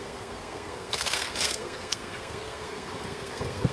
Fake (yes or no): yes